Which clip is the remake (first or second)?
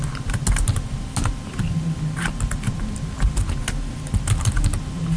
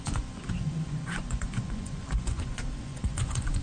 second